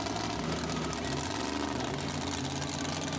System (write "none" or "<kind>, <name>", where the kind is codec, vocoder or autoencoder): none